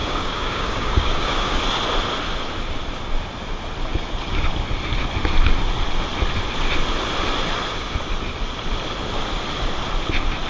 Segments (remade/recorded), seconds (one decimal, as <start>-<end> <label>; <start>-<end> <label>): 0.0-1.6 remade; 1.6-10.5 recorded